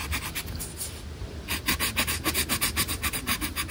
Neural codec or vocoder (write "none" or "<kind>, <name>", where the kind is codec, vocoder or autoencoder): none